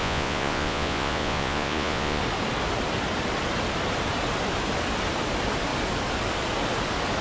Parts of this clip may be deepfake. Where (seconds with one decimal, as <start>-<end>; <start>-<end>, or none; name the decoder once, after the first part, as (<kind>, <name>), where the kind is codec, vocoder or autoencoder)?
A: 0.0-2.2 (vocoder, Vocos)